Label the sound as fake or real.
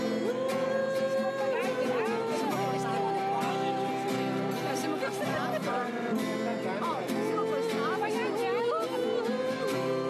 real